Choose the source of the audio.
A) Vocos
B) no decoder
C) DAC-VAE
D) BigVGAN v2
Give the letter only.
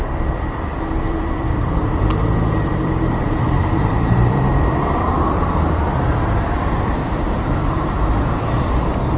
D